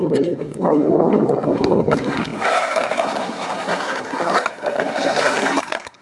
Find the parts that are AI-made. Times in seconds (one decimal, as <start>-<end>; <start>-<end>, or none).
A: 0.0-6.0